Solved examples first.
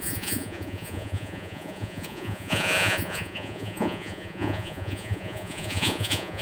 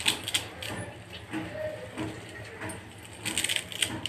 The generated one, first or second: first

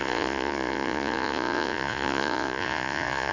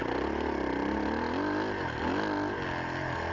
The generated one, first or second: first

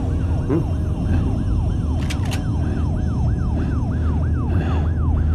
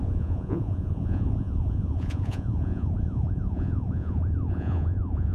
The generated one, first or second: second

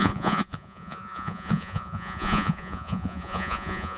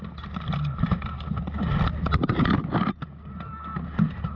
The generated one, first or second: first